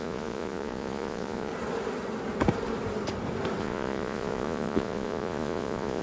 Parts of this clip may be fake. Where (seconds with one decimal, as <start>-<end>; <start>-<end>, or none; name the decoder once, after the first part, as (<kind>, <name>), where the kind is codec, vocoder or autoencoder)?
0.0-1.5 (vocoder, Vocos); 3.6-6.0